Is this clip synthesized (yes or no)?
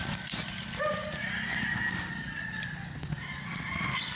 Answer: no